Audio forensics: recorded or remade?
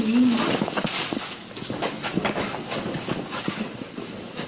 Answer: remade